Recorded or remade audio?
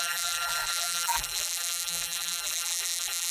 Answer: remade